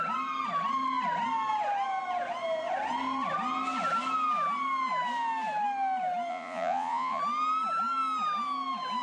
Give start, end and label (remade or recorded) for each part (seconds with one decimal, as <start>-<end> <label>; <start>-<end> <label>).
0.0-6.3 recorded; 6.3-7.2 remade; 7.2-9.0 recorded

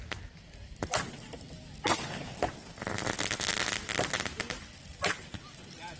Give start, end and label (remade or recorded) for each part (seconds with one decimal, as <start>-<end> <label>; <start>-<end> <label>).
0.0-6.0 recorded